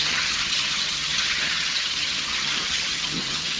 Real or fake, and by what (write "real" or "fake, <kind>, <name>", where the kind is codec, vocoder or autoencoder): fake, vocoder, HiFi-GAN